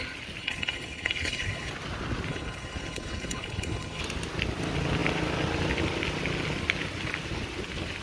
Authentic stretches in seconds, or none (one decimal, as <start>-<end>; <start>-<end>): 0.0-0.4; 1.7-2.3; 4.0-8.0